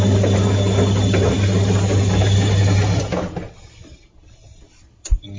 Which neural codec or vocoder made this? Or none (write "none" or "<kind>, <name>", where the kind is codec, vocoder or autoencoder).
none